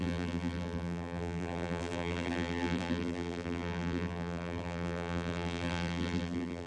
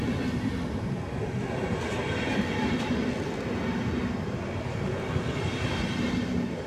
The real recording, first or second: second